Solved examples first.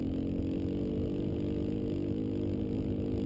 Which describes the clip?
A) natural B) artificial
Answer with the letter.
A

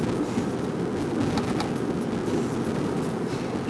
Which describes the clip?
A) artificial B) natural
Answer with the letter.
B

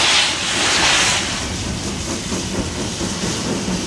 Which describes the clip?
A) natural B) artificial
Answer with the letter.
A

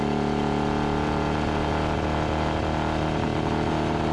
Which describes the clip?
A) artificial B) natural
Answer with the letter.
B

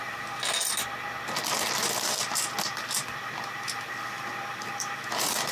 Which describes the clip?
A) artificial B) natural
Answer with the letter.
B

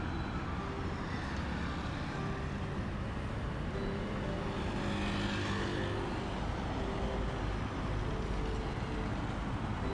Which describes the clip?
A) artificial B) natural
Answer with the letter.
B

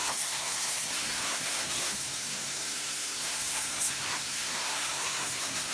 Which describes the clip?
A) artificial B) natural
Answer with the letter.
A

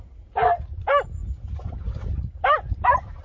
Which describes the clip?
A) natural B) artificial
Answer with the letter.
A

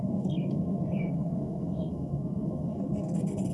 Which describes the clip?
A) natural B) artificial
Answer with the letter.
B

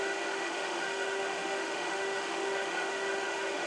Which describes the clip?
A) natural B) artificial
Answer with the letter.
B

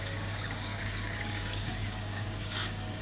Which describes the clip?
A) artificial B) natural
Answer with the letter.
A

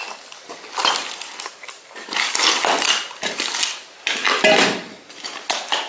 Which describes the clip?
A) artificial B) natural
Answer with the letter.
B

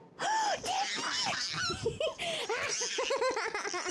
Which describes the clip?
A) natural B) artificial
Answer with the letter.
A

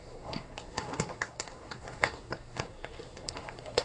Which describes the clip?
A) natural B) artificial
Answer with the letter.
B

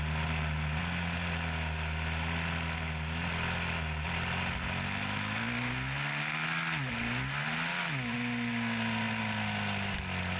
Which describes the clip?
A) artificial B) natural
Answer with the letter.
B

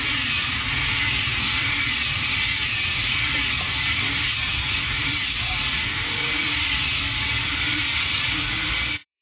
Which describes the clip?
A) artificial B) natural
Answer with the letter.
A